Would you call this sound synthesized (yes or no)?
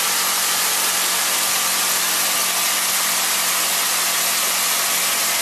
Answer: no